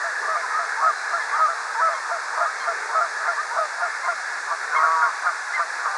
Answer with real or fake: real